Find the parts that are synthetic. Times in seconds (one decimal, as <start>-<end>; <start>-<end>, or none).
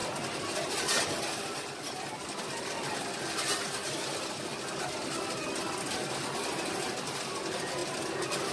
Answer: none